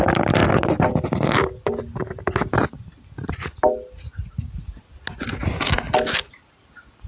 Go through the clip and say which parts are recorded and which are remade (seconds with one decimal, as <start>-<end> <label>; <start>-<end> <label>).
0.0-7.1 recorded